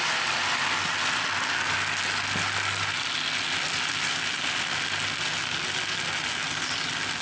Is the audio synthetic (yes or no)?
no